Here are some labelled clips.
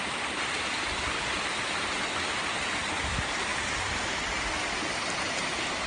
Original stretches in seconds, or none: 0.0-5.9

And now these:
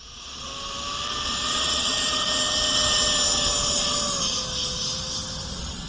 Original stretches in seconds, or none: 0.5-1.3; 1.9-5.4

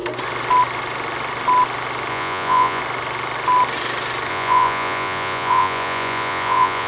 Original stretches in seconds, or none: 0.0-2.1; 2.8-4.3